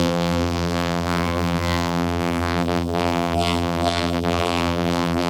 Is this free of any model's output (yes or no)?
no